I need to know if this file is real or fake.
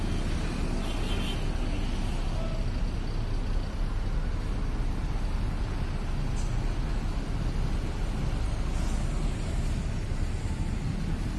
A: real